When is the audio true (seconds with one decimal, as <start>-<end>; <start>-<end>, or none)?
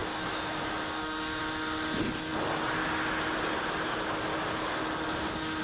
1.4-5.6